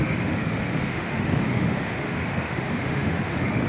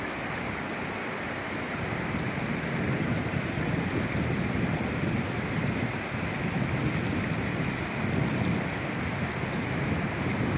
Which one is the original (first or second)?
second